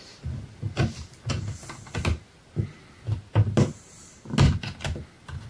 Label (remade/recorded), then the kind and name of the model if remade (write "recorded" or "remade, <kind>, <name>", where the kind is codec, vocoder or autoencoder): recorded